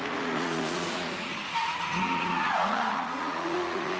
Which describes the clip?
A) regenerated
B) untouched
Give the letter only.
A